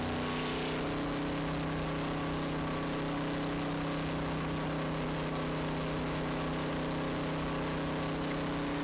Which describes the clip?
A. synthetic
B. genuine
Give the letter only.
B